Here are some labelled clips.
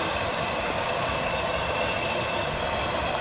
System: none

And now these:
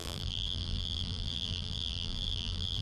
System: vocoder, BigVGAN v2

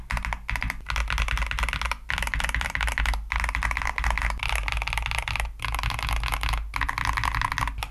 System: none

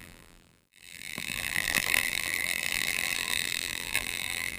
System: vocoder, BigVGAN v2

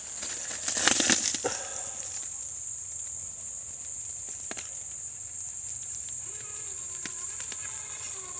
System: vocoder, BigVGAN v2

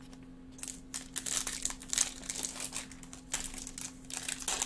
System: none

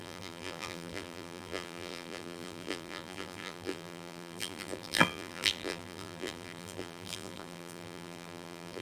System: vocoder, BigVGAN v2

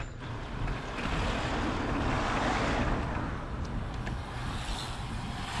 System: none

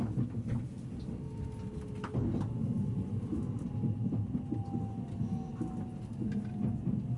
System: none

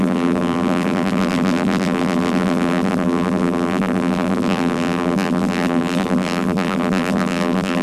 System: vocoder, BigVGAN v2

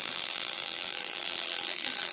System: vocoder, BigVGAN v2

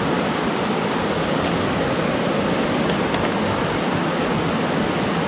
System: none